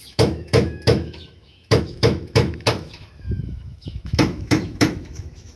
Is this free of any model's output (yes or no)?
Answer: no